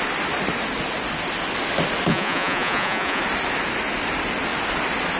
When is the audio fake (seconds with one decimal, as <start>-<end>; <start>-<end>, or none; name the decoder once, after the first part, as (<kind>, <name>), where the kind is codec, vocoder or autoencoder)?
2.1-3.2 (vocoder, Vocos)